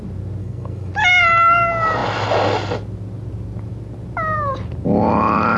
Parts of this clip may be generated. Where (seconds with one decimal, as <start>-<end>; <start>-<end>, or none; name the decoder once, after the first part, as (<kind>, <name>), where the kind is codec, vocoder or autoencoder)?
0.4-0.9 (codec, SNAC)